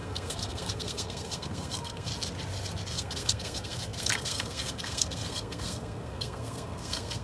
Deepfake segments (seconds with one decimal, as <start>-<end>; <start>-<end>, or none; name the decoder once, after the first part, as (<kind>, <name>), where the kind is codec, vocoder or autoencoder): 0.0-2.1 (codec, SNAC); 2.9-7.2